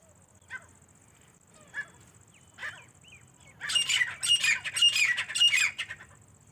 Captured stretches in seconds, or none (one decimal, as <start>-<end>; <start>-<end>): 0.0-6.5